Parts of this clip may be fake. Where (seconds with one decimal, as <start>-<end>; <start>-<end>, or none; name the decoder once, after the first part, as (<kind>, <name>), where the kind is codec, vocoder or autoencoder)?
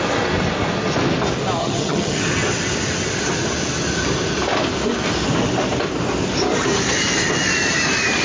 1.6-2.2 (vocoder, HiFi-GAN)